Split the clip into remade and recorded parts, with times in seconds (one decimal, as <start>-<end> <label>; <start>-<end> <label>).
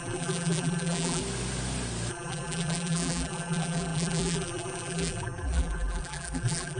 0.0-1.2 remade; 1.2-2.1 recorded; 2.1-6.8 remade